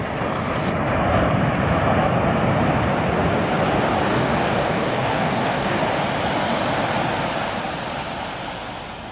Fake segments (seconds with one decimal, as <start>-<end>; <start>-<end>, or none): 4.1-5.8